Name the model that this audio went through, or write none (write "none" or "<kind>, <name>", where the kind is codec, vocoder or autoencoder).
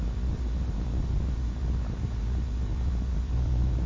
vocoder, BigVGAN v2